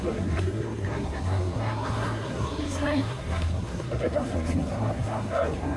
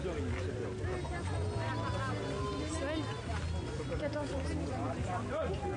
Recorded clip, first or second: second